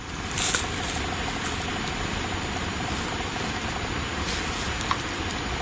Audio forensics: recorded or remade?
recorded